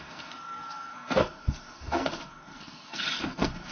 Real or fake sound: fake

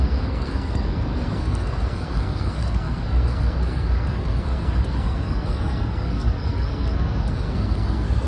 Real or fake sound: fake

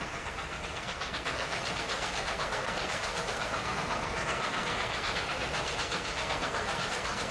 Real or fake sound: fake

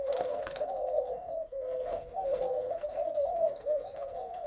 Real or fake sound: fake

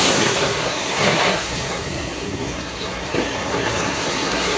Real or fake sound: fake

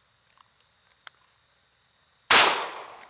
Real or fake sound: real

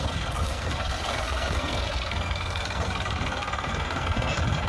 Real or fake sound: fake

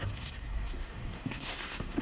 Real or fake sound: fake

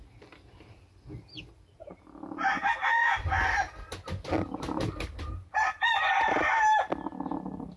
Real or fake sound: real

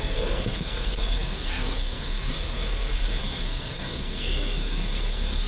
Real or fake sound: fake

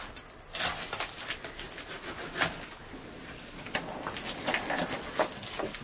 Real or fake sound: real